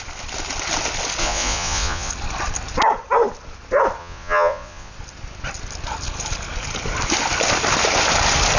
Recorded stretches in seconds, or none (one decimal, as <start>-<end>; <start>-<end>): 0.0-1.2; 2.1-4.0; 4.9-8.6